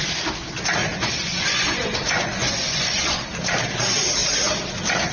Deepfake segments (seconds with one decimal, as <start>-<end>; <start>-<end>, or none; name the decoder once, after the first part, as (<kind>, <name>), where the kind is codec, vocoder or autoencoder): 0.8-3.2 (vocoder, Vocos)